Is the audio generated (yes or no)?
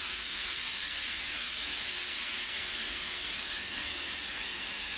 yes